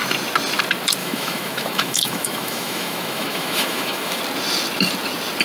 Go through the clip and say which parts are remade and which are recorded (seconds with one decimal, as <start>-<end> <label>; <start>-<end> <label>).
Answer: 0.0-1.0 recorded; 1.0-4.2 remade; 4.2-5.4 recorded